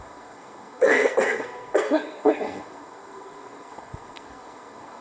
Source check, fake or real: fake